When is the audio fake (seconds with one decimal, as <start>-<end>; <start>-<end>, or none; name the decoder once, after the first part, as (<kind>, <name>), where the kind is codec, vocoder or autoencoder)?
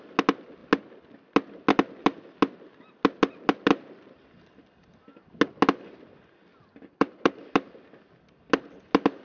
6.5-7.3 (vocoder, BigVGAN v2)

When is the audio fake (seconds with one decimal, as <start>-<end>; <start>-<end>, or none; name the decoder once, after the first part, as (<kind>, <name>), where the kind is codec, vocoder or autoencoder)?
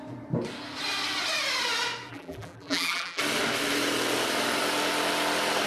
2.1-3.2 (vocoder, BigVGAN v2)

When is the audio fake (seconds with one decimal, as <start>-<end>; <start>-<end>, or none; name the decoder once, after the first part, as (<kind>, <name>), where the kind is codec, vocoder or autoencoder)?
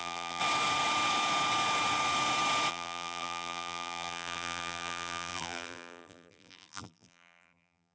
0.0-0.4 (vocoder, BigVGAN v2); 2.7-7.9